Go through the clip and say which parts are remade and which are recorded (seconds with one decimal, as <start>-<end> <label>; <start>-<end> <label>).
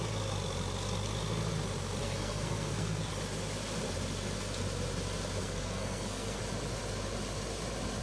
0.0-2.0 recorded; 2.0-3.1 remade; 3.1-5.4 recorded; 5.4-6.4 remade; 6.4-8.0 recorded